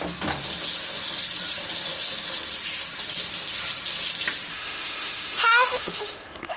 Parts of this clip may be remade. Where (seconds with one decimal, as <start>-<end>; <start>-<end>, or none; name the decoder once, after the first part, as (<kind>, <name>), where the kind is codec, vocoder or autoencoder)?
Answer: 4.5-6.6 (autoencoder, DAC-VAE)

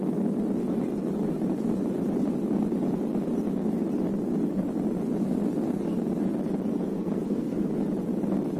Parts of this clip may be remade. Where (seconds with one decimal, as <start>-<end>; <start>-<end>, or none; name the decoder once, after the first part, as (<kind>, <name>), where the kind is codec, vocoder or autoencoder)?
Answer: 6.9-7.7 (codec, SNAC)

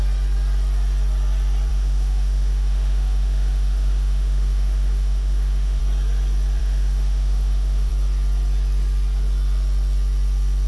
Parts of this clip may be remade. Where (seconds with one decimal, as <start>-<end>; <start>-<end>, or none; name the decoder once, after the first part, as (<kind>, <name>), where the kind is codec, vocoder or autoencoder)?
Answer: 1.7-5.8 (autoencoder, DAC-VAE); 6.6-7.9

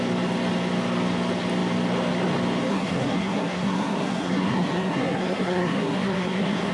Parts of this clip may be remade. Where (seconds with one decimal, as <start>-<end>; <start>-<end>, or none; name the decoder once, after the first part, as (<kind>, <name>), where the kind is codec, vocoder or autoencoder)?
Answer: 2.7-6.7 (codec, SNAC)

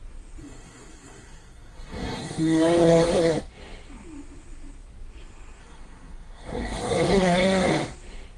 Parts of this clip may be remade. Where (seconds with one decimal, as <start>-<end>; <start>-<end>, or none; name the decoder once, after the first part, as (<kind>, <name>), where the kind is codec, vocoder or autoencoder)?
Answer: 0.4-3.4 (codec, SNAC); 5.6-7.7